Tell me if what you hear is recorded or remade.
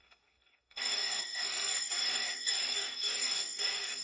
remade